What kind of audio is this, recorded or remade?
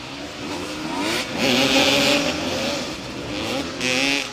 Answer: recorded